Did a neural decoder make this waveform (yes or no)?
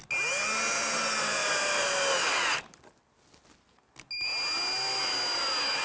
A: no